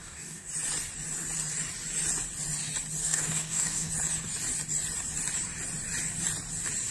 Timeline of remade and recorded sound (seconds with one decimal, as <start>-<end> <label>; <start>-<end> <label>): 0.0-0.5 remade; 0.5-3.0 recorded; 3.0-3.9 remade; 3.9-6.9 recorded

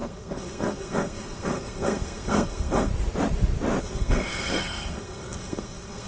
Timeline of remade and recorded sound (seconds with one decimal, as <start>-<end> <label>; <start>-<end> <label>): 0.0-2.9 remade; 2.9-3.8 recorded; 3.8-6.1 remade

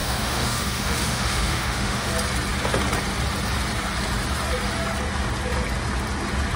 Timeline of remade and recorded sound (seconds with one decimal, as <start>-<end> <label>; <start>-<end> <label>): 0.0-2.1 remade; 2.1-6.6 recorded

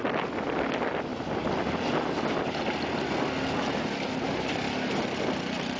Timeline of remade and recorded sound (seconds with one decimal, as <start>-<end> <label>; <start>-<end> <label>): 0.0-5.8 recorded

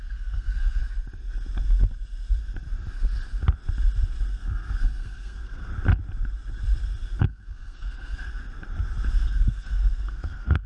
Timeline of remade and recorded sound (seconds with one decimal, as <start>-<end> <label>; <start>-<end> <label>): 0.0-0.8 remade; 0.8-4.3 recorded; 4.3-5.7 remade; 5.7-7.2 recorded; 7.2-8.4 remade; 8.4-9.1 recorded; 9.1-10.7 remade

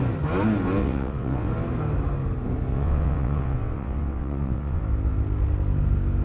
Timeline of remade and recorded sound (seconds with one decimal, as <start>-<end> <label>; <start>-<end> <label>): 0.0-0.8 recorded; 0.8-1.5 remade; 1.5-2.7 recorded; 2.7-4.8 remade; 4.8-6.2 recorded

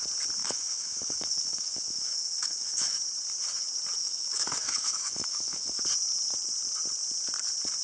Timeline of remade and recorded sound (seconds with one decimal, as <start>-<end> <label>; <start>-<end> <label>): 0.0-0.4 recorded; 0.4-3.0 remade; 3.0-4.0 recorded; 4.0-5.8 remade; 5.8-7.8 recorded

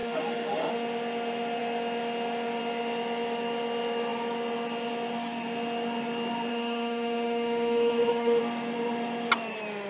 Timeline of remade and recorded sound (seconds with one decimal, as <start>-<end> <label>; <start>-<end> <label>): 0.0-0.7 remade; 0.7-6.5 recorded; 6.5-8.4 remade; 8.4-9.9 recorded